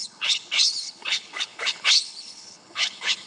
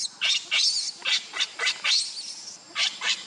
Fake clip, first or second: first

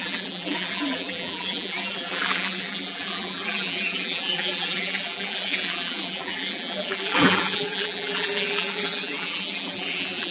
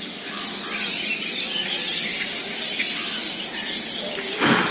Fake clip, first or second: first